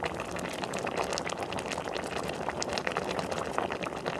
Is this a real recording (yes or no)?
yes